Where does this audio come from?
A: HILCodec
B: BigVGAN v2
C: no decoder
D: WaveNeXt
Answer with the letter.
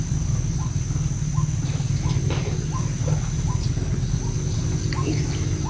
C